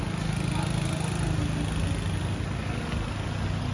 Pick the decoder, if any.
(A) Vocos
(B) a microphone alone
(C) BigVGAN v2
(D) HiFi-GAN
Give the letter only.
B